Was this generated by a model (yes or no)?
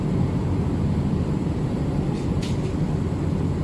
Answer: yes